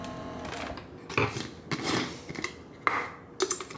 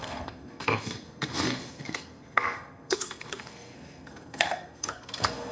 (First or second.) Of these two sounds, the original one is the first